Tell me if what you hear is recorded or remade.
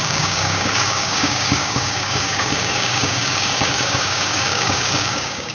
remade